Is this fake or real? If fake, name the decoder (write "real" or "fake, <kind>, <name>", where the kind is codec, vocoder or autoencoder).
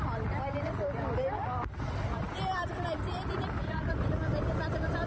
real